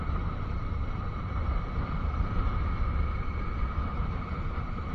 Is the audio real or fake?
real